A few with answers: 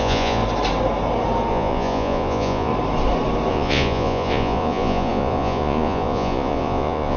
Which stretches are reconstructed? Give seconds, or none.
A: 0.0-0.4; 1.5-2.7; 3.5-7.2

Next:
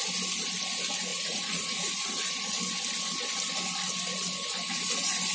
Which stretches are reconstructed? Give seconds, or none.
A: 1.1-2.6

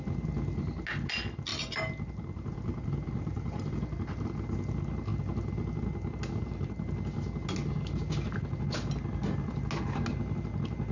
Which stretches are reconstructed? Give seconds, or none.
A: 1.5-3.7

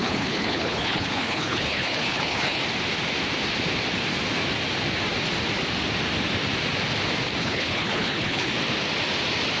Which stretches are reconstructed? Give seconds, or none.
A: 0.0-2.6; 7.4-8.5

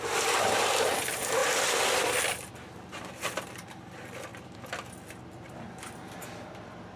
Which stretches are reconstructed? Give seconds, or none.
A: none

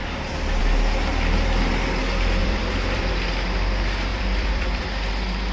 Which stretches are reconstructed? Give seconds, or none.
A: 0.0-0.6; 1.1-1.7; 2.4-3.1; 4.1-5.1

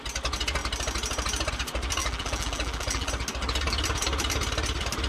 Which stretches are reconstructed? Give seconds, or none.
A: 2.0-3.1